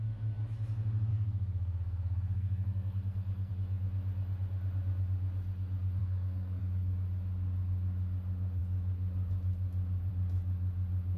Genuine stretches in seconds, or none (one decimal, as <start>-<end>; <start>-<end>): 0.0-1.1; 3.5-6.0; 6.6-11.2